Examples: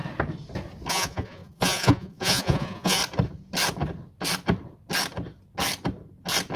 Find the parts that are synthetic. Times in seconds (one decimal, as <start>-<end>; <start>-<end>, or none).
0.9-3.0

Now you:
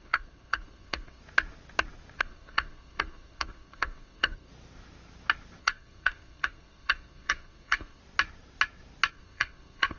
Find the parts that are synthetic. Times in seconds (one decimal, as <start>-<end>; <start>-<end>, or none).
0.0-1.2; 2.2-4.5; 5.6-8.0; 9.1-10.0

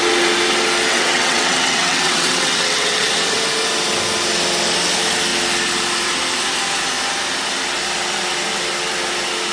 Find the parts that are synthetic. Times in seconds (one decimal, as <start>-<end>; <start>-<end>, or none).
0.9-3.1